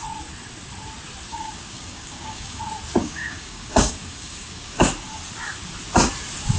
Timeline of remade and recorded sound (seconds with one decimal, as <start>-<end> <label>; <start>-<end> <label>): 0.0-1.3 recorded; 1.3-2.6 remade; 2.6-3.0 recorded; 3.0-4.9 remade; 4.9-6.6 recorded

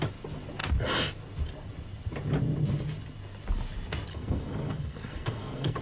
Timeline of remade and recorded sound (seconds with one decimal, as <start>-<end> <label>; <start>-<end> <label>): 0.0-4.1 recorded; 4.1-5.8 remade